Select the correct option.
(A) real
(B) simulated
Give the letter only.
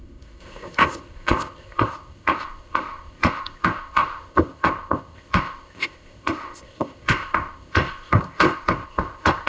B